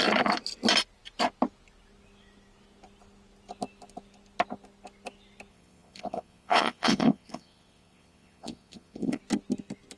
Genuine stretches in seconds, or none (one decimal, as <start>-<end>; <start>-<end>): 0.0-5.5; 9.2-10.0

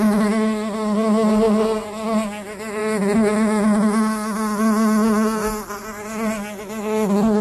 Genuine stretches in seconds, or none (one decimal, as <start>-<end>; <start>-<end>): 0.0-7.4